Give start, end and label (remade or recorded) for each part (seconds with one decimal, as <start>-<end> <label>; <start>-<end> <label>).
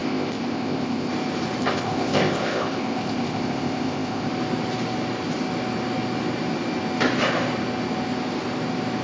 0.0-1.1 remade; 1.1-1.6 recorded; 1.6-4.3 remade; 4.3-9.0 recorded